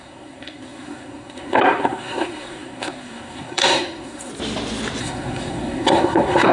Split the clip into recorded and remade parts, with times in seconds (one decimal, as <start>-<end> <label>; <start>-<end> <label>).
0.0-4.3 remade; 4.3-5.0 recorded; 5.0-6.5 remade